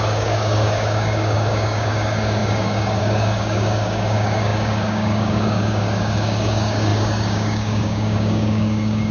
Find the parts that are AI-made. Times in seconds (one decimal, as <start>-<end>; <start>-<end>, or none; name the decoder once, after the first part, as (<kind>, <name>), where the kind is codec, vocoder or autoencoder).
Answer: 0.0-9.1 (codec, DAC)